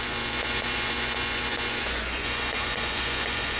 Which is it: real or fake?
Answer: fake